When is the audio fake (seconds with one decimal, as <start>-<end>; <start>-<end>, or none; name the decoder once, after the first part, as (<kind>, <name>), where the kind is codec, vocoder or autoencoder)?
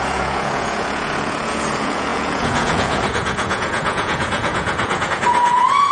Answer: 0.0-5.9 (vocoder, Vocos)